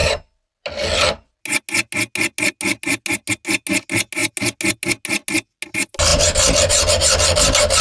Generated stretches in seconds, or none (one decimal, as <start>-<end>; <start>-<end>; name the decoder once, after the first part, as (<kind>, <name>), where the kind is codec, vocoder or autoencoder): none